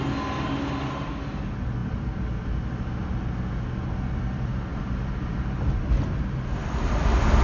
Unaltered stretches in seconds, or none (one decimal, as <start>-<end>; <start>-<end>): 0.0-7.4

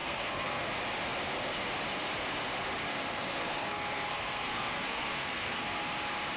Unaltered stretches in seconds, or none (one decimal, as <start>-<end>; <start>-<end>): 0.7-2.9; 5.8-6.4

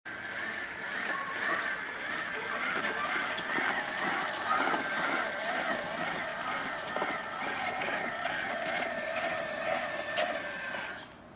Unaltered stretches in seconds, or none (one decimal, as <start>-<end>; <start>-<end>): 0.0-11.4

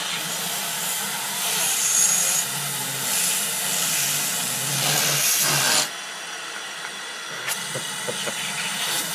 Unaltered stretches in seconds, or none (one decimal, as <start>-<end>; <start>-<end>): 0.0-9.1

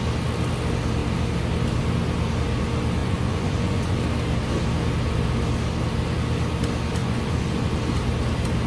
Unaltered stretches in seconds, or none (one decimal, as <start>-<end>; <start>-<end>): 0.0-3.0; 4.0-7.0; 7.8-8.7

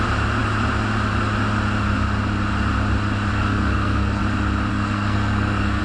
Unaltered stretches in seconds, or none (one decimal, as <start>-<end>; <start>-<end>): 0.0-3.3; 4.2-4.7

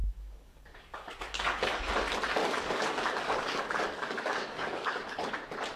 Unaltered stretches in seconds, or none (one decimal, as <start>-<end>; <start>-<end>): 1.9-2.4; 5.3-5.8

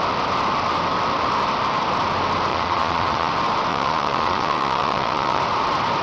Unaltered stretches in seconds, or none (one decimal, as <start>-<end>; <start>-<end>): 0.0-2.5; 3.3-3.7; 5.4-6.0